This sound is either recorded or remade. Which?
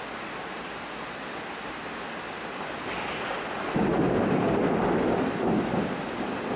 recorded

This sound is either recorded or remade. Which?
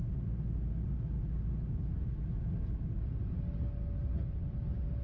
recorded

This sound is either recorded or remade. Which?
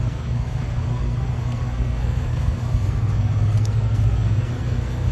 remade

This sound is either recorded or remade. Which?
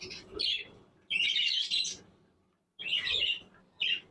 recorded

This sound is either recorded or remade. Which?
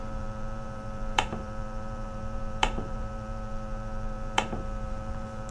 remade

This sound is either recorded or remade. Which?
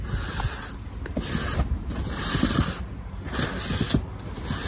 recorded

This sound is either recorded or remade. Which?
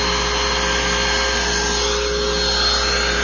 recorded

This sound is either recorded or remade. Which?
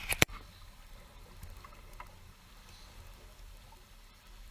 remade